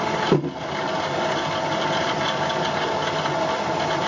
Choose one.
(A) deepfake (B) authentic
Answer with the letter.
B